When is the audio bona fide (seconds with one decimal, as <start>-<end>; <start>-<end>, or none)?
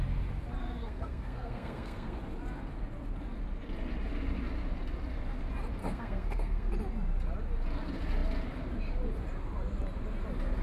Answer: 0.0-0.6; 2.2-5.8; 6.7-10.6